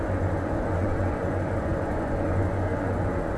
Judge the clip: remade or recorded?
remade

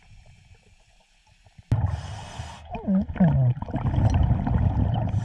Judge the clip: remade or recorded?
recorded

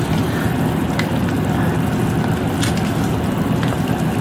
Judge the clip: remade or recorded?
recorded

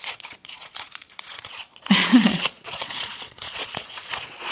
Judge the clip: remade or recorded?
remade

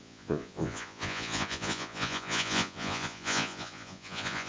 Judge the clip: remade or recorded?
remade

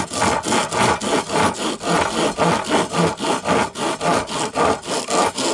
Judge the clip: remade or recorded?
recorded